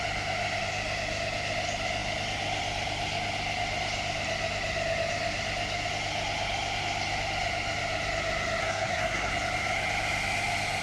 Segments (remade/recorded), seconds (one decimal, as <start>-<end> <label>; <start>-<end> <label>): 0.0-8.6 recorded; 8.6-9.3 remade; 9.3-10.8 recorded

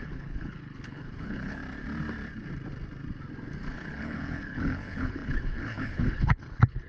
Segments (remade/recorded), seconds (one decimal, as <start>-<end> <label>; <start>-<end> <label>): 0.0-1.6 remade; 1.6-3.7 recorded; 3.7-6.9 remade

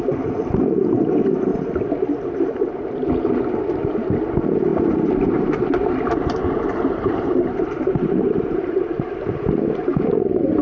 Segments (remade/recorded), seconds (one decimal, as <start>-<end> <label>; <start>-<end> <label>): 0.0-4.7 recorded; 4.7-9.4 remade; 9.4-10.6 recorded

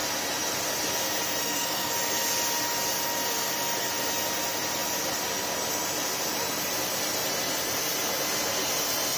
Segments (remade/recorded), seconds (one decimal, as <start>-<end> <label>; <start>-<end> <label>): 0.0-1.4 recorded; 1.4-1.9 remade; 1.9-9.2 recorded

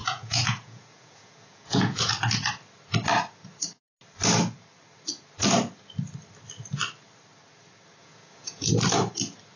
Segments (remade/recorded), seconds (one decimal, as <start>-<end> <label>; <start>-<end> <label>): 0.0-2.1 remade; 2.1-8.0 recorded; 8.0-8.7 remade; 8.7-9.6 recorded

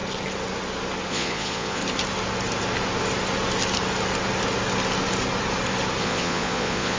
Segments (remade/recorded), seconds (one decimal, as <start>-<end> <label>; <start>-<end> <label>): 0.0-1.1 recorded; 1.1-1.8 remade; 1.8-6.0 recorded; 6.0-7.0 remade

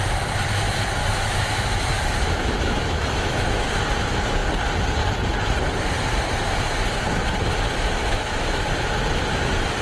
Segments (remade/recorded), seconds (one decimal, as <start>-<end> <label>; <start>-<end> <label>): 0.0-1.0 recorded; 1.0-3.8 remade; 3.8-8.0 recorded; 8.0-8.6 remade; 8.6-9.8 recorded